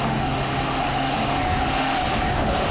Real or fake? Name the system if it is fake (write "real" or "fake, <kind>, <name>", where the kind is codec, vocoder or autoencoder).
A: fake, autoencoder, DAC-VAE